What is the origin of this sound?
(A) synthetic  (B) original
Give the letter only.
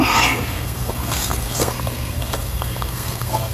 A